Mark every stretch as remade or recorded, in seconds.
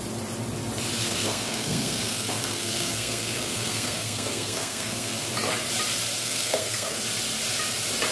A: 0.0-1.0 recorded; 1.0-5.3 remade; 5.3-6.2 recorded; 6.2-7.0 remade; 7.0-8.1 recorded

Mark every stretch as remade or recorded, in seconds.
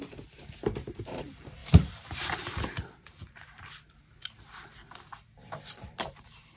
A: 0.0-1.6 remade; 1.6-5.6 recorded; 5.6-6.6 remade